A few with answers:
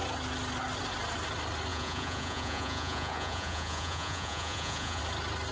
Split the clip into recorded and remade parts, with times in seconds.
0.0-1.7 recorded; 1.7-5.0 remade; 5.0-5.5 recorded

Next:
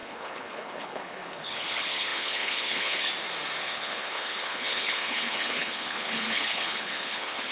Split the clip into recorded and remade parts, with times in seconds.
0.0-3.1 remade; 3.1-3.6 recorded; 3.6-7.5 remade

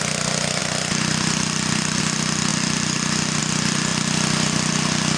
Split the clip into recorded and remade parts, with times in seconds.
0.0-0.6 recorded; 0.6-2.0 remade; 2.0-2.5 recorded; 2.5-3.4 remade; 3.4-3.9 recorded; 3.9-4.7 remade; 4.7-5.2 recorded

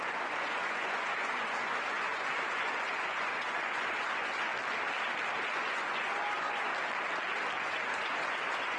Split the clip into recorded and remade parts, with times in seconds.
0.0-4.5 remade; 4.5-5.5 recorded; 5.5-6.7 remade; 6.7-7.6 recorded; 7.6-8.8 remade